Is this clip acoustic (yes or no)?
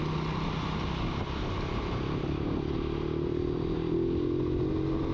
yes